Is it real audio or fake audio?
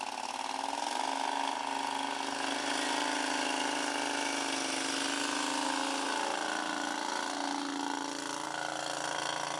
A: real